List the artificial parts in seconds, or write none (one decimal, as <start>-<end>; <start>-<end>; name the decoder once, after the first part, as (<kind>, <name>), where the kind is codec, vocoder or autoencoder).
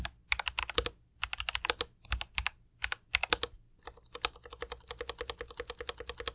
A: none